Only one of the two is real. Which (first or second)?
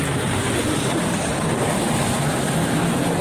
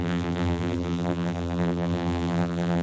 first